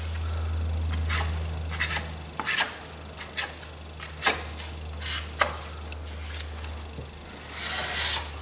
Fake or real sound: real